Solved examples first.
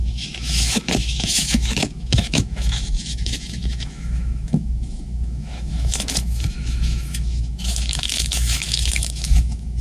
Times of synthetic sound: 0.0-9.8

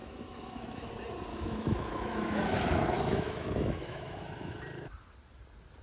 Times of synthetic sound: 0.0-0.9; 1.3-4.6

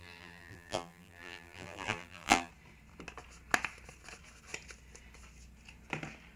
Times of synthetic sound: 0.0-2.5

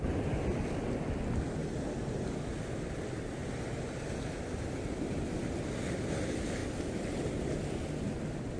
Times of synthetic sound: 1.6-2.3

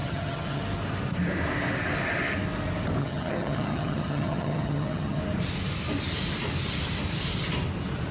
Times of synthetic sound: 0.0-0.6; 3.0-5.2

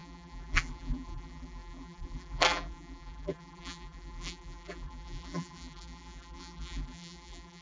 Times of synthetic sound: 0.0-7.6

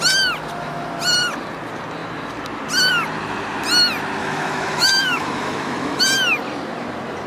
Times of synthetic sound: 4.2-6.0